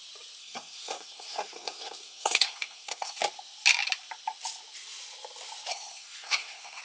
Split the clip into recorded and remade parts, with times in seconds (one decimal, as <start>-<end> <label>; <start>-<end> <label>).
0.0-0.4 recorded; 0.4-3.2 remade; 3.2-5.7 recorded; 5.7-6.8 remade